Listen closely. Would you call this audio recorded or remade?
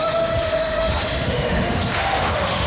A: remade